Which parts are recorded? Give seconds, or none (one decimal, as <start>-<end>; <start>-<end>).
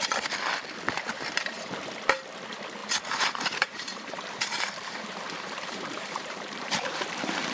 0.0-2.8